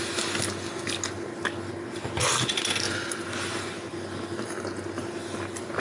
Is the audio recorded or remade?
recorded